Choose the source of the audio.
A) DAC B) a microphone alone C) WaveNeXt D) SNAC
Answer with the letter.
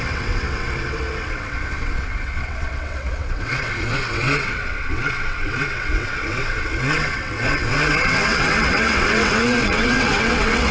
C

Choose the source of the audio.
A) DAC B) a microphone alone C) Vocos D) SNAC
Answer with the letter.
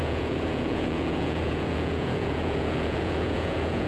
C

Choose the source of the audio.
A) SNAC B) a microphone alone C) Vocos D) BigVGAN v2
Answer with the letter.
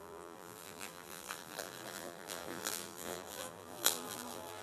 D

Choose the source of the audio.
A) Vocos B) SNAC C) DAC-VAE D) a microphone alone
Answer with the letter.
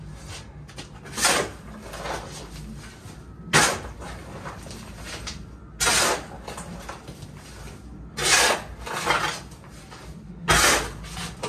D